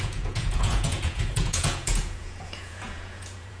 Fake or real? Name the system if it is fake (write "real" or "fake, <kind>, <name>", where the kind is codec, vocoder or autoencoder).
fake, vocoder, Vocos